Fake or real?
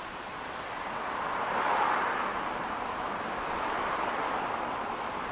real